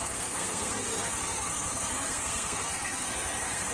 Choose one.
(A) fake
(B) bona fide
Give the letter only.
A